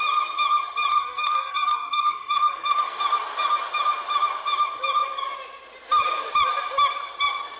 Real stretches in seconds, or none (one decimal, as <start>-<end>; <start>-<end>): 0.0-0.9; 3.0-7.6